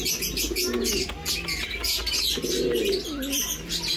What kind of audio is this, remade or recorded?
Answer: recorded